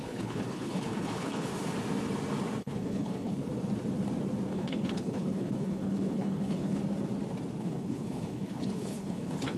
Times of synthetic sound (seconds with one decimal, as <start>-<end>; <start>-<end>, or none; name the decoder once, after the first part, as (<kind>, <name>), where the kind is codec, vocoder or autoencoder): 0.0-1.5 (codec, HILCodec); 2.6-3.5; 4.5-6.8; 7.6-9.6